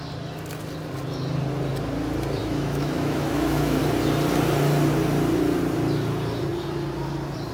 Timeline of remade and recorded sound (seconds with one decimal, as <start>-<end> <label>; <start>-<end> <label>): 0.0-2.4 recorded; 2.4-3.8 remade; 3.8-7.5 recorded